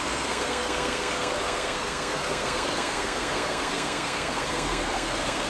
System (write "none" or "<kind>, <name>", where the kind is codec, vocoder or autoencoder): codec, SNAC